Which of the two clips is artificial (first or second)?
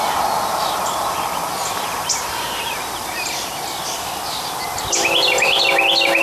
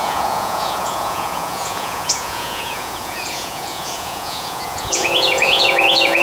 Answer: second